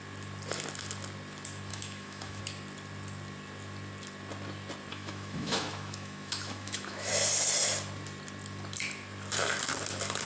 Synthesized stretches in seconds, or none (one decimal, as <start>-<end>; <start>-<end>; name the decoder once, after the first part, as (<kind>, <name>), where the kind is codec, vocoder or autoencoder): 1.7-2.4 (autoencoder, DAC-VAE); 4.9-7.1